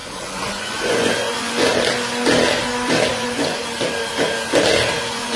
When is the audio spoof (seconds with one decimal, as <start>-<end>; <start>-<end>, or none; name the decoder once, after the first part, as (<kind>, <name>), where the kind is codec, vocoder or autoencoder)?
0.0-1.7 (vocoder, Vocos); 3.1-3.6; 5.0-5.4